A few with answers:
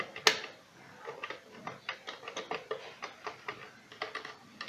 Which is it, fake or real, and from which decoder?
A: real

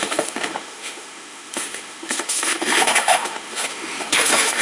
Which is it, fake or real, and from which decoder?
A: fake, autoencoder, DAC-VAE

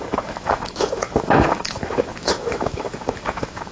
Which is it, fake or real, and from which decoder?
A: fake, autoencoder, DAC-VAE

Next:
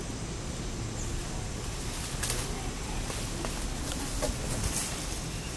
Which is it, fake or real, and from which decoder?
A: real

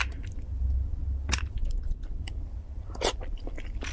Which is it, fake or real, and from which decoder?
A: real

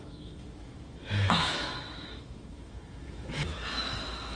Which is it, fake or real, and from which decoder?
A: fake, autoencoder, DAC-VAE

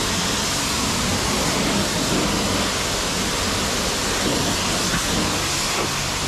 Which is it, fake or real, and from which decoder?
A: real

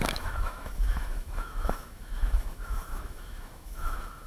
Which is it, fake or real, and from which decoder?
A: fake, autoencoder, DAC-VAE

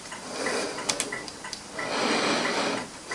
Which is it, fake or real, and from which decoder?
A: real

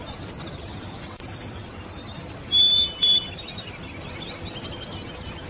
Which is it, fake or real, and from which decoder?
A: real